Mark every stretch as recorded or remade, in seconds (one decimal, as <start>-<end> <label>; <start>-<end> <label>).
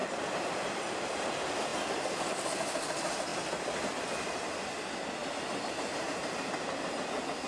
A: 0.0-0.8 remade; 0.8-5.2 recorded; 5.2-6.9 remade; 6.9-7.5 recorded